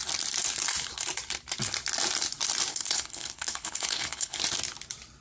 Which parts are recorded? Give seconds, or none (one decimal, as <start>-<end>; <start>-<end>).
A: 0.0-2.7; 4.4-5.2